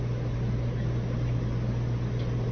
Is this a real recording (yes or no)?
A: yes